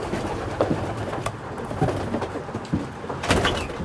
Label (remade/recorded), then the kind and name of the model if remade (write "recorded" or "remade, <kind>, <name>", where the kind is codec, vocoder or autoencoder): recorded